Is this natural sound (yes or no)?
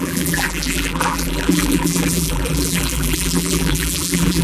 no